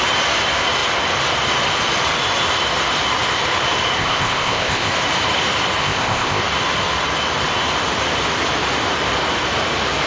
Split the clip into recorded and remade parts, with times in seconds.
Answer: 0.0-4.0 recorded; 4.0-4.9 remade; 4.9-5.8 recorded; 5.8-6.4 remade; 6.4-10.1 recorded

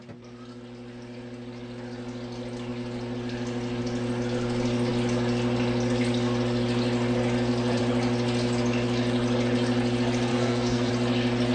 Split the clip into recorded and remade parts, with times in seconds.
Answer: 0.0-10.3 recorded; 10.3-10.9 remade; 10.9-11.5 recorded

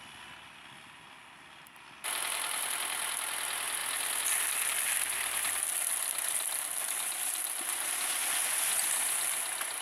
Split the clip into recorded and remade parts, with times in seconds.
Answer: 0.0-9.8 recorded

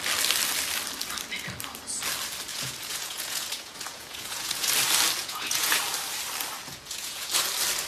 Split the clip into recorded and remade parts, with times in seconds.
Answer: 0.0-2.5 recorded; 2.5-4.7 remade; 4.7-5.2 recorded; 5.2-5.8 remade; 5.8-6.6 recorded; 6.6-7.3 remade; 7.3-7.9 recorded

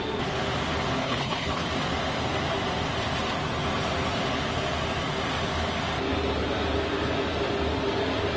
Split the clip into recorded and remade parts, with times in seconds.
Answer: 0.0-1.0 recorded; 1.0-1.7 remade; 1.7-8.4 recorded

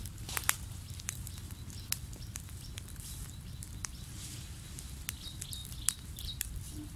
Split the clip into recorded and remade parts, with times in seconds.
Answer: 0.0-5.6 recorded; 5.6-7.0 remade

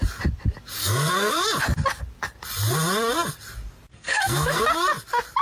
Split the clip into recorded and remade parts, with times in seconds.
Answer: 0.0-0.8 recorded; 0.8-1.3 remade; 1.3-3.9 recorded; 3.9-4.6 remade; 4.6-5.4 recorded

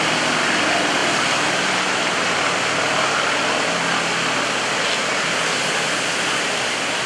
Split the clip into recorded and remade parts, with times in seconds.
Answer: 0.0-7.1 recorded